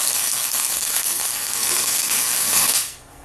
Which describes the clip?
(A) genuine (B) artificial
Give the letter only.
B